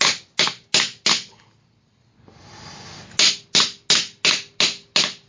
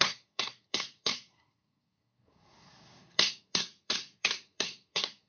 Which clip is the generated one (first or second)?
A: second